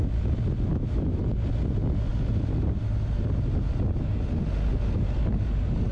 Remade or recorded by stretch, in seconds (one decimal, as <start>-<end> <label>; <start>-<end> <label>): 0.0-0.7 recorded; 0.7-1.2 remade; 1.2-5.9 recorded